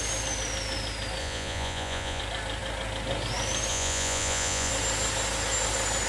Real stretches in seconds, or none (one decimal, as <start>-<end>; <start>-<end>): 0.0-1.2; 2.2-3.7; 4.7-6.1